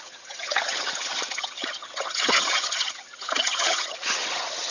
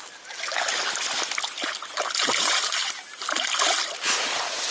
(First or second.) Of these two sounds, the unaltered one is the second